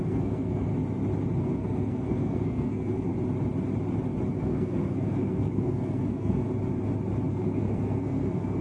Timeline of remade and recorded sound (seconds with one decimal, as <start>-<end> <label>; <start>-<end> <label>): 0.0-0.7 remade; 0.7-1.4 recorded; 1.4-3.1 remade; 3.1-4.4 recorded; 4.4-6.5 remade; 6.5-7.3 recorded; 7.3-8.6 remade